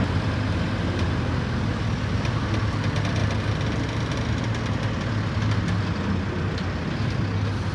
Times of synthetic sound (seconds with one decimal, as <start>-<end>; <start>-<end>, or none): none